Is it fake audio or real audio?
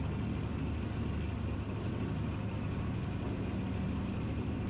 real